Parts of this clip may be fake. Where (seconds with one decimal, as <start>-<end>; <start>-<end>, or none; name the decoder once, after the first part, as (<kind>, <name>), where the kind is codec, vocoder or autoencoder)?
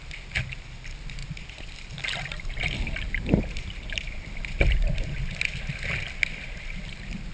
none